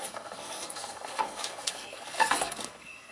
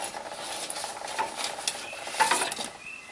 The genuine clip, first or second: second